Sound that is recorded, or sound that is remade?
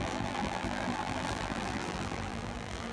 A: remade